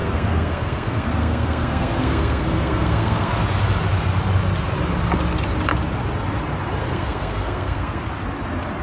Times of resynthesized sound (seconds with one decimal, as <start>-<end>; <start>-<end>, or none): 0.0-3.3; 6.8-8.0